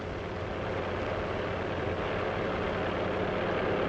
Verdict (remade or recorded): recorded